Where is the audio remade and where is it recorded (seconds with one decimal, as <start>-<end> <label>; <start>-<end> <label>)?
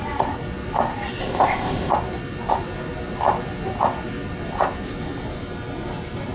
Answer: 0.0-1.2 recorded; 1.2-1.9 remade; 1.9-6.3 recorded